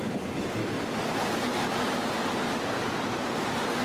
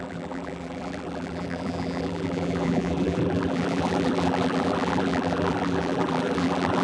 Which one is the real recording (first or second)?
first